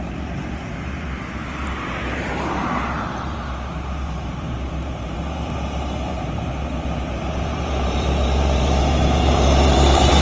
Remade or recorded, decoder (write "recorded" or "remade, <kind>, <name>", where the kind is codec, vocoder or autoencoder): remade, vocoder, BigVGAN v2